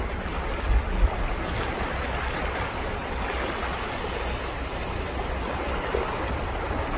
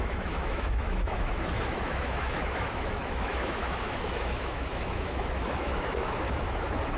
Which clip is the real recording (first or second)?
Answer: first